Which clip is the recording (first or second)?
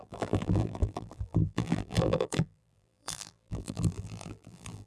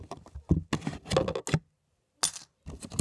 second